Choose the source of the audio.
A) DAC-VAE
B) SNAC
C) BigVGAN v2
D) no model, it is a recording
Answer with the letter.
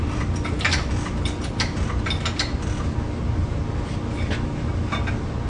D